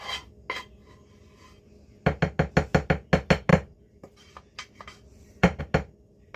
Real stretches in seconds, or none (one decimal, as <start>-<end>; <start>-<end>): 0.0-3.5; 5.6-6.4

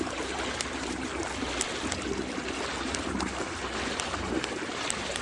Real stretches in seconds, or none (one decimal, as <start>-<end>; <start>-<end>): 1.1-4.2

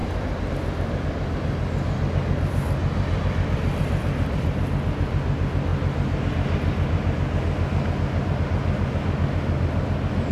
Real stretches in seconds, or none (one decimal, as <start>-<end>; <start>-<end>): 0.5-2.8; 4.7-10.3